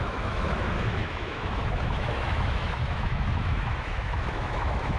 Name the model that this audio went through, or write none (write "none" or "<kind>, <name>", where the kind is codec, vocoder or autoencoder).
autoencoder, DAC-VAE